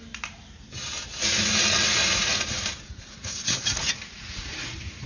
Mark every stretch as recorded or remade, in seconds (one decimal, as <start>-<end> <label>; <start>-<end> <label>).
0.0-2.0 recorded; 2.0-5.1 remade